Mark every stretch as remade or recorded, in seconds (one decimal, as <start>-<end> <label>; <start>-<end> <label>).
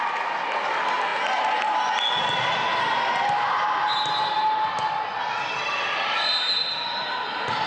0.0-7.7 recorded